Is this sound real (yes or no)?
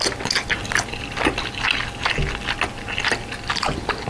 yes